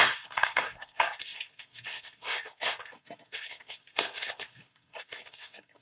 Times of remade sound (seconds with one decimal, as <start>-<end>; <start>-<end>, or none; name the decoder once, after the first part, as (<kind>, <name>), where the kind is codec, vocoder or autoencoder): 0.0-5.8 (codec, SNAC)